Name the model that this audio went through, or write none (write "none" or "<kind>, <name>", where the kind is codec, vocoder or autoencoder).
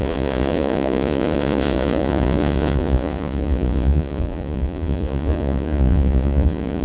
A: vocoder, Vocos